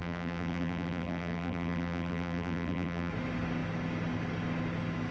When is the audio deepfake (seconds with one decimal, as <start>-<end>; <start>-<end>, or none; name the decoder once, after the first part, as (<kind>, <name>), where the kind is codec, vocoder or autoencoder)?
0.0-3.1 (vocoder, BigVGAN v2)